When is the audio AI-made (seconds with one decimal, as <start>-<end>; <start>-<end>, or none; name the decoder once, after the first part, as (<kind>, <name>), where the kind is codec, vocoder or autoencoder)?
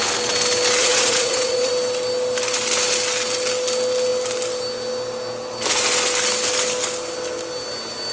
0.8-1.7 (vocoder, Vocos)